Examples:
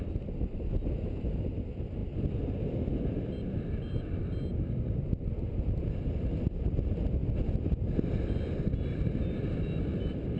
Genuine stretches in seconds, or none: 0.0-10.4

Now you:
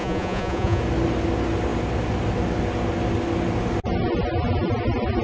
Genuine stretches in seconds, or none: 0.8-5.2

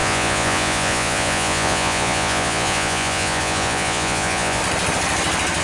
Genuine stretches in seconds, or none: 4.6-5.6

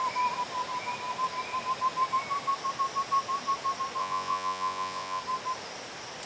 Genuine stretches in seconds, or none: 0.0-4.0; 5.2-6.3